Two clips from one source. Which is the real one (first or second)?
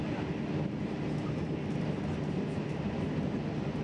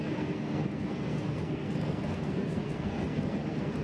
first